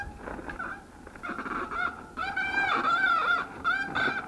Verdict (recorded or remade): recorded